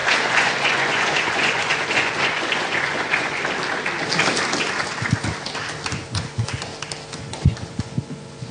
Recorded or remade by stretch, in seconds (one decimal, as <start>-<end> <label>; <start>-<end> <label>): 0.0-3.4 remade; 3.4-5.9 recorded; 5.9-6.7 remade; 6.7-7.3 recorded; 7.3-8.5 remade